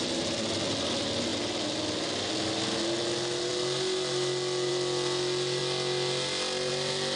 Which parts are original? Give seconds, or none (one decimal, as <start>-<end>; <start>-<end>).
0.0-7.2